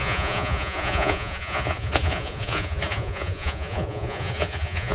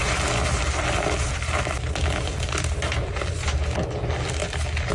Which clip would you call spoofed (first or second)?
first